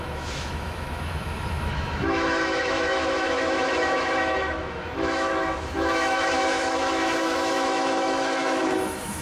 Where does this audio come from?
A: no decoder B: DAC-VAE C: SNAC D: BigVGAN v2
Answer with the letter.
B